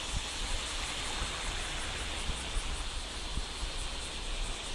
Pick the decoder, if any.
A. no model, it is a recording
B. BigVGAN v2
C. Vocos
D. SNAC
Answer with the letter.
A